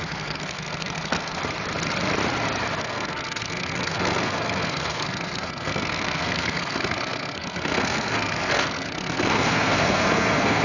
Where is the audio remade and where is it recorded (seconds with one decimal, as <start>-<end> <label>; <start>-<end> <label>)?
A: 0.0-1.4 remade; 1.4-2.8 recorded; 2.8-10.6 remade